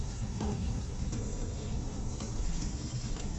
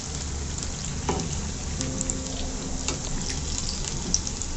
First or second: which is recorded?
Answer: second